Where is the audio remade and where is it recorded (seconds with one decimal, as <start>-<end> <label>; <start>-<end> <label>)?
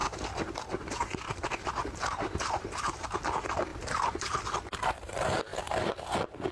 0.0-3.2 remade; 3.2-3.7 recorded; 3.7-4.4 remade; 4.4-6.5 recorded